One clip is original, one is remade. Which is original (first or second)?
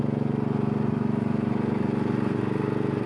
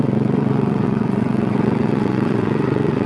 first